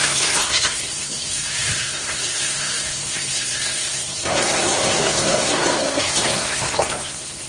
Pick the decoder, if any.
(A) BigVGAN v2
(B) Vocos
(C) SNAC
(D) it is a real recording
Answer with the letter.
C